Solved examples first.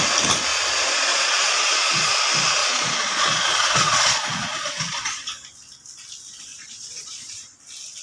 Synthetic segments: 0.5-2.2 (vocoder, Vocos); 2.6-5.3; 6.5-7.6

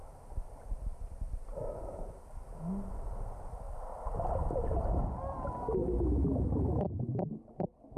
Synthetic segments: 5.8-6.9 (autoencoder, DAC-VAE)

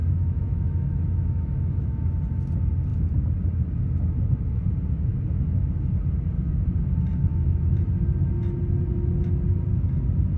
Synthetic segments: 0.0-2.2 (autoencoder, DAC-VAE)

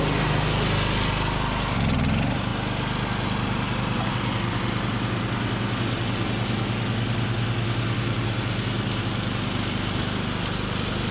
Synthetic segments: none